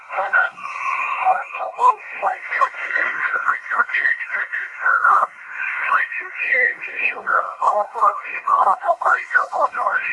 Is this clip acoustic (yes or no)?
no